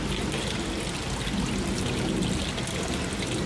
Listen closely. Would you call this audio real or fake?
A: real